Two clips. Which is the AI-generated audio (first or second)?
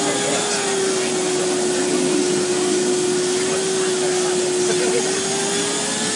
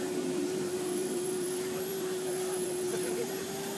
second